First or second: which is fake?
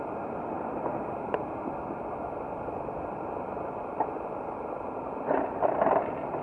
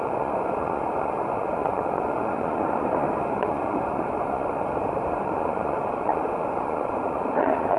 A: second